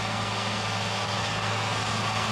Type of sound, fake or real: fake